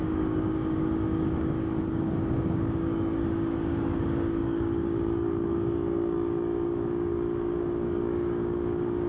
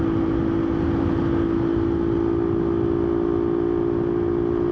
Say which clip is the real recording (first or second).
second